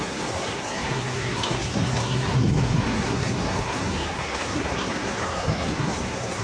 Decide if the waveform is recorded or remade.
remade